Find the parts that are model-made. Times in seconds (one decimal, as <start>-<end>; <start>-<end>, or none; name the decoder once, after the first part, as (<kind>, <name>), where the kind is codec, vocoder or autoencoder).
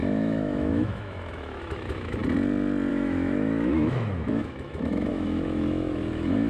0.0-2.2 (autoencoder, DAC-VAE); 2.9-6.5